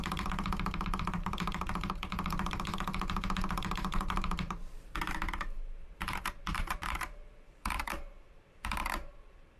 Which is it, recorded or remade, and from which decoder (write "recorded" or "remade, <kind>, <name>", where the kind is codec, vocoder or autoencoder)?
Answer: remade, vocoder, BigVGAN v2